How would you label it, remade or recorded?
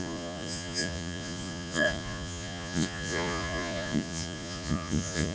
remade